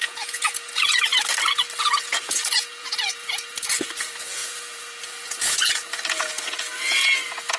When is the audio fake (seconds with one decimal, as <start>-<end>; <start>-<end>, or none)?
0.0-1.1; 1.8-7.6